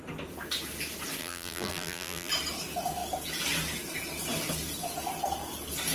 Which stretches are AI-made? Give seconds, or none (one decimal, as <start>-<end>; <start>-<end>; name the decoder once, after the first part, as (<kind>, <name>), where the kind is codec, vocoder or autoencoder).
1.2-2.3 (vocoder, BigVGAN v2)